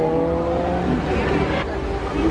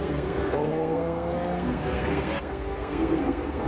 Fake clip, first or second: second